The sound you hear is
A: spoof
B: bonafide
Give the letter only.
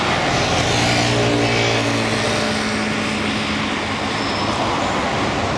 B